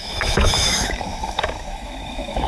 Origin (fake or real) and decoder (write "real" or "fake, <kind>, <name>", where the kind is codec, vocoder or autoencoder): fake, autoencoder, DAC-VAE